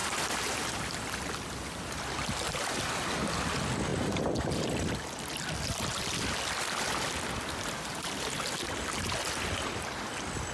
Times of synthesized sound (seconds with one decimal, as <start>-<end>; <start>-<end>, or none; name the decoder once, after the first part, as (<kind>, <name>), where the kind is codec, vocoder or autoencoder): 0.0-1.0 (vocoder, BigVGAN v2)